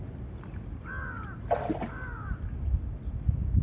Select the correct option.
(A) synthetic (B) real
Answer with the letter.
B